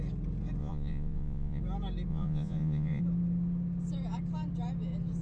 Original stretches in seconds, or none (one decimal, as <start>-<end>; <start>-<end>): 0.0-0.6; 1.6-2.1; 3.0-5.2